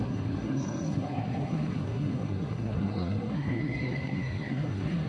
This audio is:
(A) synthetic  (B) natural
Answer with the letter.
A